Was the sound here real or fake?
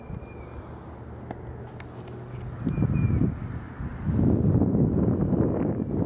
real